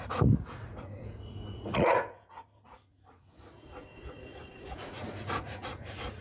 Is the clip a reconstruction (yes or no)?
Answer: yes